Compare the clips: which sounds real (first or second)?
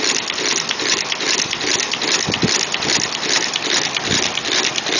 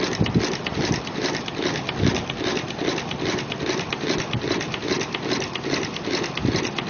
first